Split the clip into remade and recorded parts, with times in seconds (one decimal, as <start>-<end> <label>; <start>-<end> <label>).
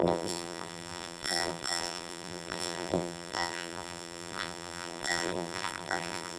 0.0-6.4 remade